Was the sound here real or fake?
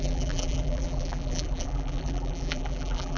fake